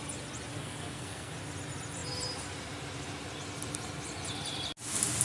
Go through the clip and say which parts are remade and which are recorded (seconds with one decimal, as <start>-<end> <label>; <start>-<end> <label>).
0.0-0.5 recorded; 0.5-1.3 remade; 1.3-5.2 recorded